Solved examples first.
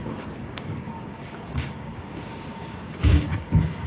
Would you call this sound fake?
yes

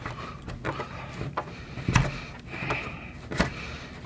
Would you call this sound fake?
no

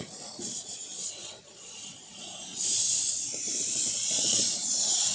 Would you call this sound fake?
yes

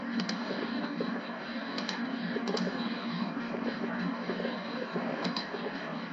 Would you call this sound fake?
yes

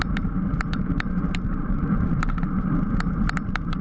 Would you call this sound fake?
yes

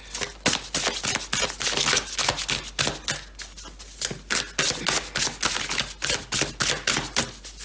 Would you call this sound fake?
no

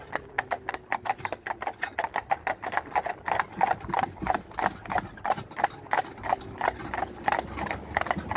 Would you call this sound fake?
no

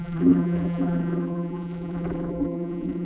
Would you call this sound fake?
yes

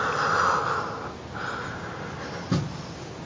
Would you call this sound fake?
no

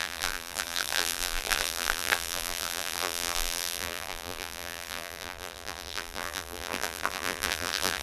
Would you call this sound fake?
yes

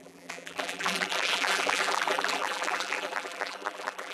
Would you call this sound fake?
yes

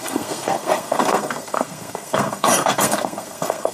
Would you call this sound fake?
yes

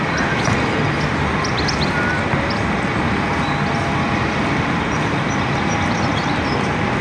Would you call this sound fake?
no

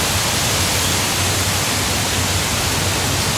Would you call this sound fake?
no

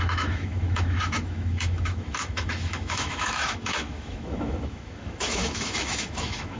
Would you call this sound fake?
yes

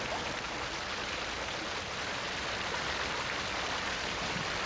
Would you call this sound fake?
no